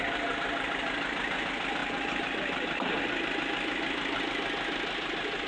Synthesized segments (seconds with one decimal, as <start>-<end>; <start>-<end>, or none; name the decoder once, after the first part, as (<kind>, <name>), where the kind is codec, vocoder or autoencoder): 1.8-3.0 (vocoder, BigVGAN v2)